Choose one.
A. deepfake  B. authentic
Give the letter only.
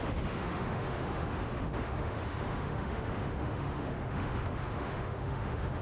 A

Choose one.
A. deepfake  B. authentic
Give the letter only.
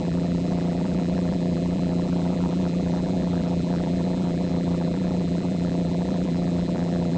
A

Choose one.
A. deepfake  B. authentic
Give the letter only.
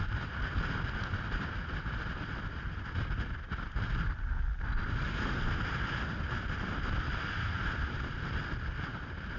B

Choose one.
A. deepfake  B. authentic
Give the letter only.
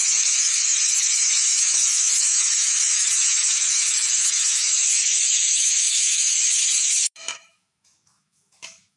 A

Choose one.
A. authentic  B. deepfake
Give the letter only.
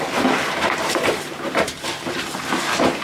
A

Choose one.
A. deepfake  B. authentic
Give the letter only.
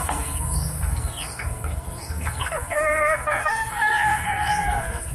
A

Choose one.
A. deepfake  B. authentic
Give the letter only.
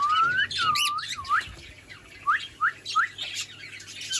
B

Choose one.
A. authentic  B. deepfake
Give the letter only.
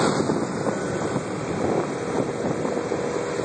A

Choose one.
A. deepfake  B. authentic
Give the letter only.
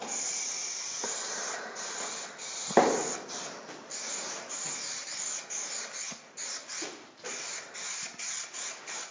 B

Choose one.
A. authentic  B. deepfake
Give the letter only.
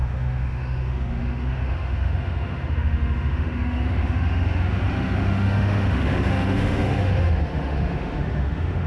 B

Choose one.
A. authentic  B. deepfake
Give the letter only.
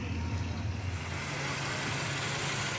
A